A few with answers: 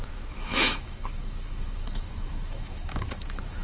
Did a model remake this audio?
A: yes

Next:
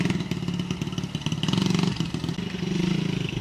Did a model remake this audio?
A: no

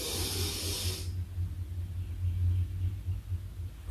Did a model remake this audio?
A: no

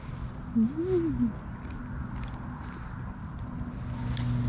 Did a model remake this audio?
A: no